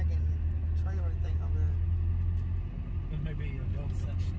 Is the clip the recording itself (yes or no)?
yes